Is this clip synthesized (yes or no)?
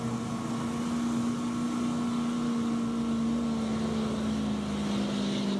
no